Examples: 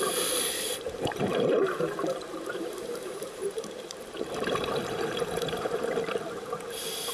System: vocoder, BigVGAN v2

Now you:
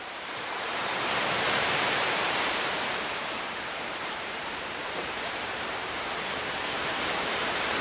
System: vocoder, BigVGAN v2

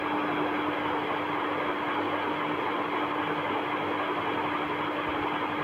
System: none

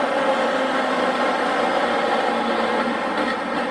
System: none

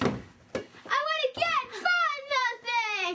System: vocoder, BigVGAN v2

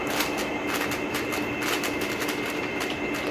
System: none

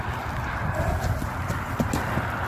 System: none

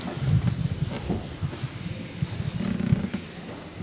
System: none